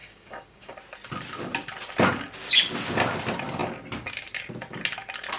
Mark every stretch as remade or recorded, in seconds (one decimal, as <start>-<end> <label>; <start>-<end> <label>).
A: 0.0-0.7 remade; 0.7-5.4 recorded